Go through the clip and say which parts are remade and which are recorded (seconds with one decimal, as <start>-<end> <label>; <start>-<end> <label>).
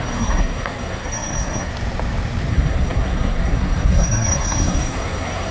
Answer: 0.0-1.7 remade; 1.7-2.5 recorded; 2.5-5.5 remade